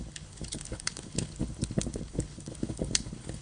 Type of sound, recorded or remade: remade